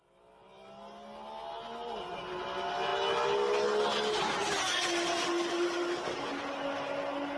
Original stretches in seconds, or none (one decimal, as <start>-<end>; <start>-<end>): 0.0-7.4